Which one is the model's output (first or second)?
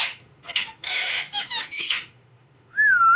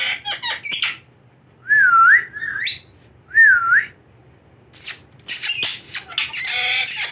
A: first